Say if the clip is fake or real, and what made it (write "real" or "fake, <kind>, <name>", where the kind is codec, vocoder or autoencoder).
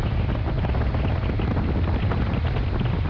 real